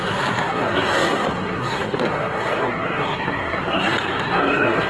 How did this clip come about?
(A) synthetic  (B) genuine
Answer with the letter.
A